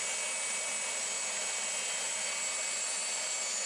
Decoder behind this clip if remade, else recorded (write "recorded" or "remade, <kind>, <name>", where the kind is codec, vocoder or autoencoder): recorded